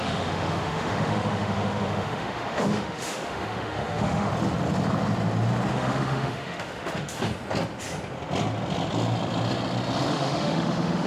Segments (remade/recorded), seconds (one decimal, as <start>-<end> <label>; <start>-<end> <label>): 0.0-4.3 remade; 4.3-5.7 recorded; 5.7-7.3 remade; 7.3-10.1 recorded; 10.1-11.1 remade